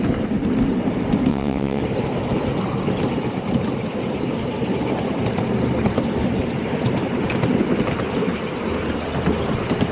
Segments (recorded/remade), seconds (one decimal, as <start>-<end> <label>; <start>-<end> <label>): 0.0-1.3 recorded; 1.3-1.8 remade; 1.8-9.9 recorded

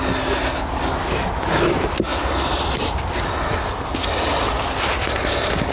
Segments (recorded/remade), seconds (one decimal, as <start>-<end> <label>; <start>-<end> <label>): 0.0-5.7 recorded